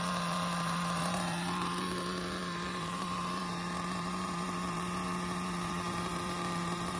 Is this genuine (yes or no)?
no